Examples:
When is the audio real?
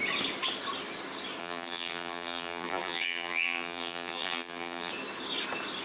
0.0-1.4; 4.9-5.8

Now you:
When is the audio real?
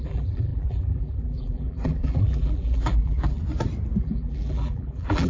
3.4-4.0